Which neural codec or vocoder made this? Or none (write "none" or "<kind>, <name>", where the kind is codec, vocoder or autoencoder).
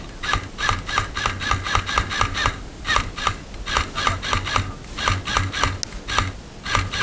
none